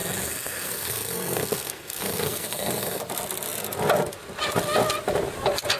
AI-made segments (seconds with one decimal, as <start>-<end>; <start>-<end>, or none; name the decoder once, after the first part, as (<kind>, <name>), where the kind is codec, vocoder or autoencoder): 0.0-3.0 (codec, SNAC)